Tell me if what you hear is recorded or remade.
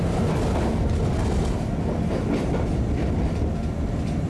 remade